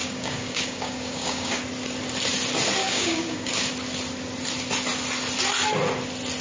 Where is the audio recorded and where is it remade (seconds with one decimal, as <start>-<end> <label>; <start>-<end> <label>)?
0.0-1.6 remade; 1.6-2.8 recorded; 2.8-3.5 remade; 3.5-6.4 recorded